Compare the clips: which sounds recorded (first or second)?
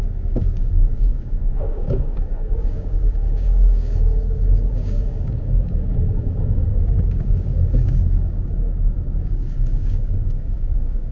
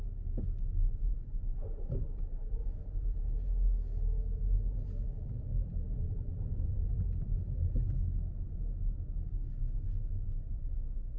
second